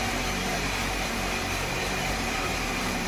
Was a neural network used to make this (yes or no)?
yes